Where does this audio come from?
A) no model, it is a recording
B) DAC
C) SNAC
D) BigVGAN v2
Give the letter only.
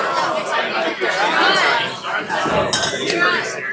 A